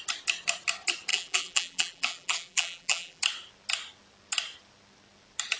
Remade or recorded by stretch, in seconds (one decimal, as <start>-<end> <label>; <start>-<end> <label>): 0.0-1.1 recorded; 1.1-3.2 remade; 3.2-5.6 recorded